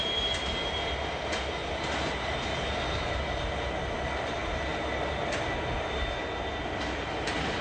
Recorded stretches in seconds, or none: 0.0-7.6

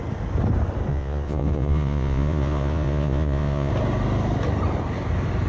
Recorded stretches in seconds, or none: 0.0-0.9; 3.7-5.5

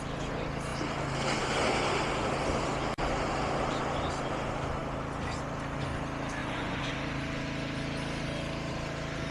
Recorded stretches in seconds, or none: 0.0-6.4; 6.9-9.3

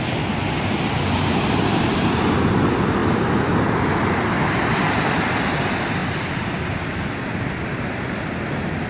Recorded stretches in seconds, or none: 0.0-8.9

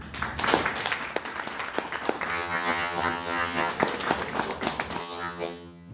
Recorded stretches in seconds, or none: 0.0-2.3; 3.7-5.0

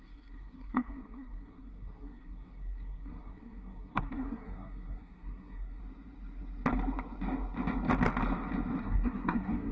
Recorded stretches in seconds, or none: 5.8-8.8